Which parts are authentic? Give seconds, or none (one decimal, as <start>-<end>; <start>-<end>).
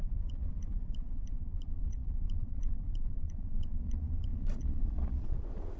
none